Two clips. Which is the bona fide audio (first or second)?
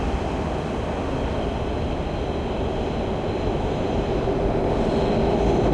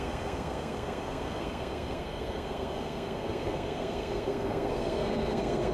first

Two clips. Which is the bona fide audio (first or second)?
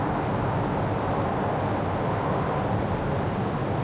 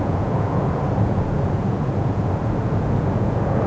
first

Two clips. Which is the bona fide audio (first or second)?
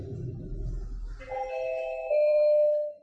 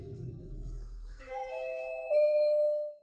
first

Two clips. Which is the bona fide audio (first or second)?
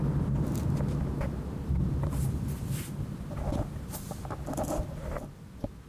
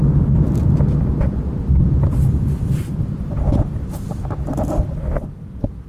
first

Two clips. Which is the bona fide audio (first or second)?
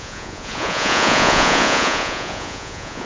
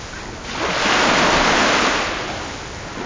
second